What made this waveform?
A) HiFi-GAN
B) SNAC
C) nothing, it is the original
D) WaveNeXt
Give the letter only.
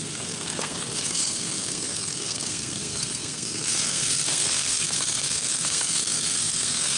B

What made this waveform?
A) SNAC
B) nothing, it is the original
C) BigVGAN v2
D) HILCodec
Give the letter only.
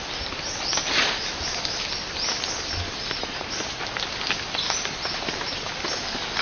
B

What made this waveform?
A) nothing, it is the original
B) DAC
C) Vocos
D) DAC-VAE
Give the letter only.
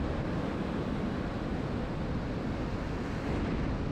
A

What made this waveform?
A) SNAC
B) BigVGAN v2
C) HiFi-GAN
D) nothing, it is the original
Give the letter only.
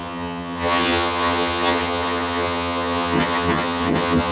C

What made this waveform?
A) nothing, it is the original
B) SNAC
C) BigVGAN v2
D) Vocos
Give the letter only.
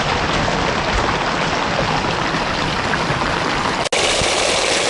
A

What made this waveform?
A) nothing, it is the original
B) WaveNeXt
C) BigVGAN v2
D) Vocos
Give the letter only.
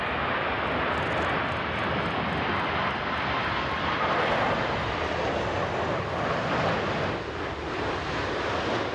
A